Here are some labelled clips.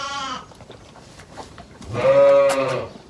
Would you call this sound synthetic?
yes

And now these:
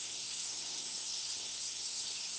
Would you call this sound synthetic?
yes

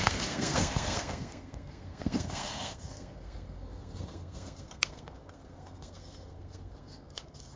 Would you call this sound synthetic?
yes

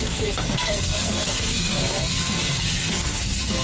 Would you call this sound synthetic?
yes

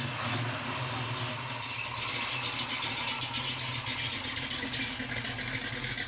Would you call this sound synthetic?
no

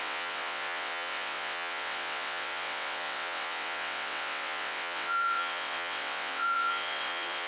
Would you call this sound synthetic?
yes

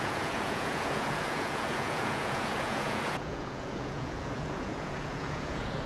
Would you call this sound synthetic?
yes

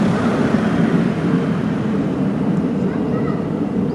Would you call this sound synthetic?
no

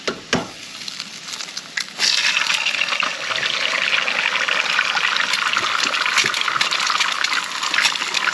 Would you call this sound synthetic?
no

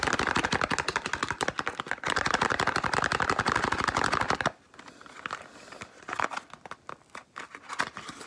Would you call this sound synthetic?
no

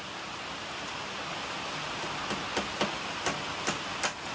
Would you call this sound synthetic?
no